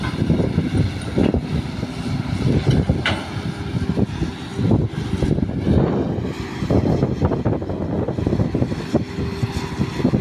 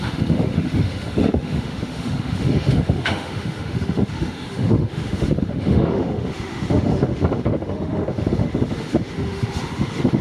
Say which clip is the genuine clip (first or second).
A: first